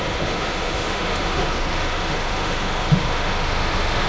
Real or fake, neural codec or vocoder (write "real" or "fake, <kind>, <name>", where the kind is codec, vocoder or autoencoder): fake, autoencoder, DAC-VAE